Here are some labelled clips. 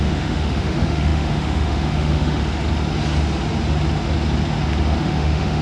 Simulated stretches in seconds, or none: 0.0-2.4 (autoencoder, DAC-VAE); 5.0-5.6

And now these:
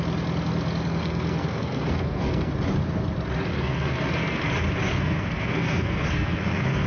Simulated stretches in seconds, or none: 1.0-2.5 (codec, SNAC); 3.5-4.4; 4.9-6.9